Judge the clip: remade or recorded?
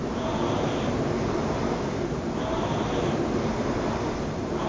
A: remade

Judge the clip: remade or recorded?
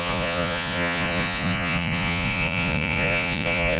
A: remade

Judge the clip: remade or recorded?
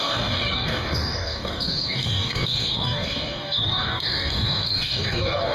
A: remade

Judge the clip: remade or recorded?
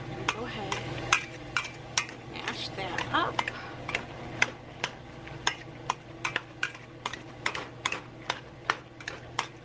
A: recorded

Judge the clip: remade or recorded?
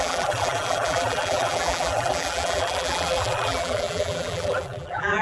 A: remade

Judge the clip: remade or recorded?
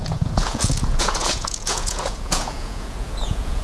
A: remade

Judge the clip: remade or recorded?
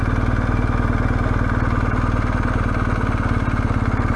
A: recorded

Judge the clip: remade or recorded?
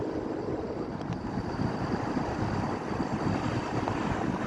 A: remade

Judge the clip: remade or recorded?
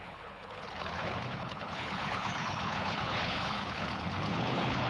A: remade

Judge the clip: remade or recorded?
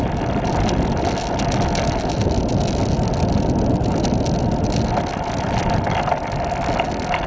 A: recorded